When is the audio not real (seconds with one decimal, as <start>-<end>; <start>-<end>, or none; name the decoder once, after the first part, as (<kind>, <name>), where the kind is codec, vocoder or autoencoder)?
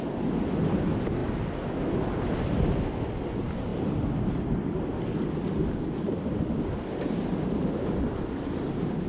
none